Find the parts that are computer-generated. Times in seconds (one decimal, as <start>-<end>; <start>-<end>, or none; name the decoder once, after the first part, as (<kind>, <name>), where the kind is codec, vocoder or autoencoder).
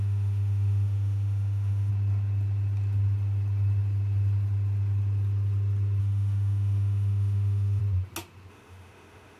0.0-1.9 (autoencoder, DAC-VAE); 6.0-7.8; 8.5-9.4